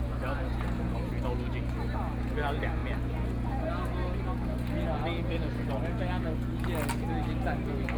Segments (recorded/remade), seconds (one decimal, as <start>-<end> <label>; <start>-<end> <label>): 0.0-8.0 recorded